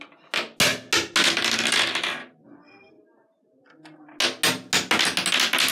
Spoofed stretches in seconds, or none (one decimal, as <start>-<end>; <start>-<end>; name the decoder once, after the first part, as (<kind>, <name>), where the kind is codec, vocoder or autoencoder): none